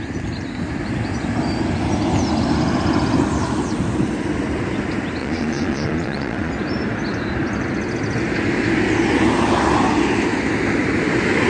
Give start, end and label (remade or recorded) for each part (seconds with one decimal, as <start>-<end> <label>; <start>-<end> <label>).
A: 0.0-5.2 recorded; 5.2-6.5 remade; 6.5-11.5 recorded